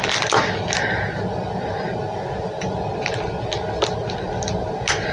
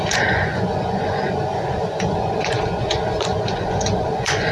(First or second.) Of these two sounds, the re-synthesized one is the second